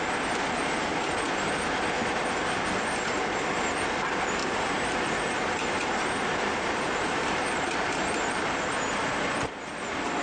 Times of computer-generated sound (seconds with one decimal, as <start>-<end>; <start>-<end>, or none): 4.4-7.6